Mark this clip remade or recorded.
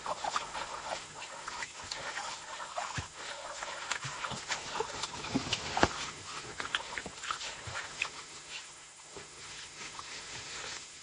remade